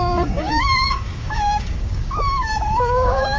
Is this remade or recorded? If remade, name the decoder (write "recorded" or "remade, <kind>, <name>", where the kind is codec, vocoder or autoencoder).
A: remade, codec, DAC